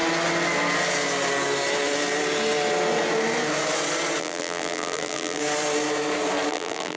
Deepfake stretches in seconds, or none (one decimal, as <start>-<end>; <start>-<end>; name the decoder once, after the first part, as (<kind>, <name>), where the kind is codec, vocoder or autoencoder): 4.2-5.4 (vocoder, BigVGAN v2); 6.5-7.0